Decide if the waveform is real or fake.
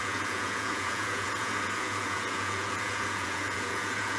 fake